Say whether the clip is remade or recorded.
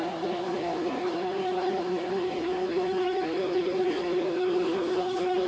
remade